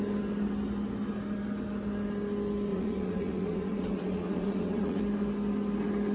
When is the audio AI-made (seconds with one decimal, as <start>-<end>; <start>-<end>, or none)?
2.7-5.0